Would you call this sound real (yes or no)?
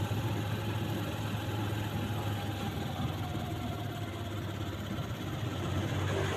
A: yes